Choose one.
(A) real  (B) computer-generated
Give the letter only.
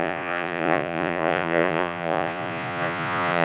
B